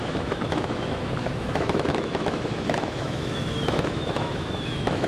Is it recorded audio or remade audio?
remade